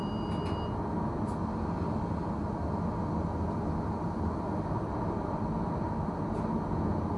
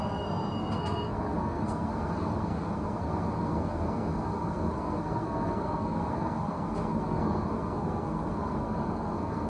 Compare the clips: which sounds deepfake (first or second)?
second